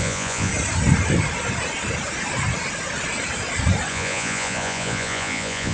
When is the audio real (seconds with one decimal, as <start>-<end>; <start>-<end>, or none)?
0.5-3.9